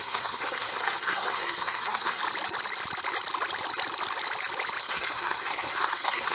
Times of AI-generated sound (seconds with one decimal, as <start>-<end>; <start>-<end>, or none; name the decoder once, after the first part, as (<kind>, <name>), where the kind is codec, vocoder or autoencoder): 0.0-2.2 (codec, SNAC); 4.8-6.3